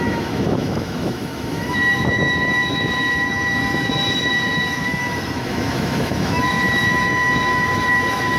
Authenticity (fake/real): fake